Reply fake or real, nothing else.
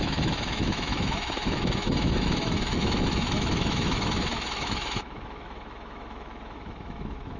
fake